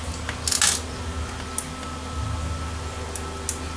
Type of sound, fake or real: real